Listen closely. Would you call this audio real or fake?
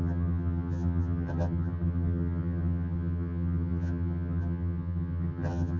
fake